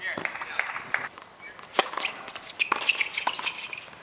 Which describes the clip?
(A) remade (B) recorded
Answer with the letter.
A